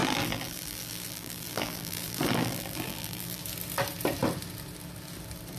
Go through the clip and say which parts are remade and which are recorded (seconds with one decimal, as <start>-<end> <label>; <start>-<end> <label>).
0.0-3.4 remade; 3.4-5.6 recorded